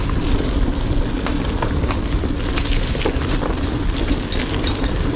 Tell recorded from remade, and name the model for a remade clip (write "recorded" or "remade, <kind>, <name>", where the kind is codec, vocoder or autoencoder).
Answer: recorded